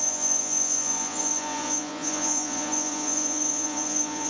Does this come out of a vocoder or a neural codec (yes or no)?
yes